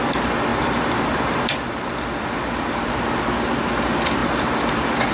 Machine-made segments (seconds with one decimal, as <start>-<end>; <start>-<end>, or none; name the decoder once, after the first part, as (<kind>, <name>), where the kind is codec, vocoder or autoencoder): 0.5-2.8 (vocoder, BigVGAN v2); 4.2-5.1